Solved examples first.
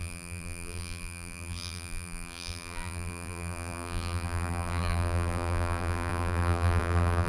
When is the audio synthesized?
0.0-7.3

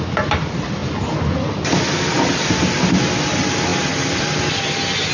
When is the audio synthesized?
none